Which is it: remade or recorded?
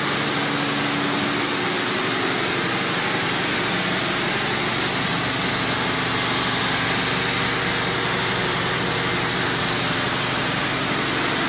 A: recorded